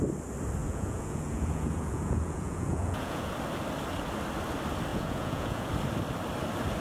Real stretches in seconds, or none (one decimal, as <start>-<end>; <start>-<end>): 0.0-0.6; 3.3-4.9; 5.7-6.8